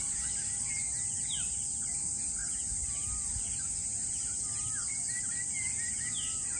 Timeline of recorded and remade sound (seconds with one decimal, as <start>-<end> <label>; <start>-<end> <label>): 0.0-6.6 recorded